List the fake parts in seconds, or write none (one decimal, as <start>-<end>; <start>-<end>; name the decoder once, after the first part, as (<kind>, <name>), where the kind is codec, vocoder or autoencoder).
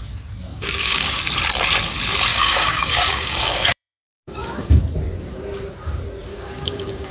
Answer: 0.5-1.2 (codec, DAC); 2.3-4.8; 6.3-7.1